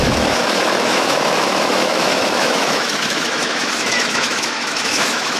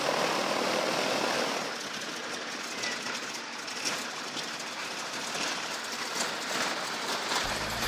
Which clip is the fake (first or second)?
first